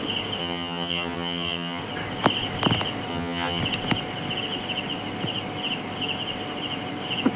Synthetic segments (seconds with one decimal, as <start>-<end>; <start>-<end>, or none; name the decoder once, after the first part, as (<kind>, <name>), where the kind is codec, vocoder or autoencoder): 0.4-1.8 (vocoder, HiFi-GAN); 3.1-3.6